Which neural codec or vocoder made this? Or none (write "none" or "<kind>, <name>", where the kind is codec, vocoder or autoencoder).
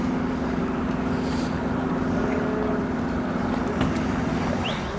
none